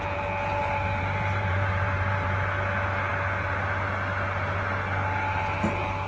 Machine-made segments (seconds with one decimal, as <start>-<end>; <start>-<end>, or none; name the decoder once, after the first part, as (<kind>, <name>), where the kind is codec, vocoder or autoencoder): 0.6-2.5 (vocoder, BigVGAN v2)